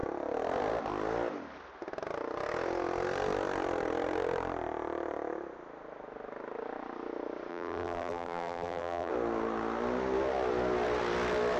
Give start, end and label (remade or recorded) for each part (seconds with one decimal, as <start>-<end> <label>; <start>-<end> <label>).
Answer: 0.0-7.5 recorded; 7.5-9.1 remade; 9.1-11.6 recorded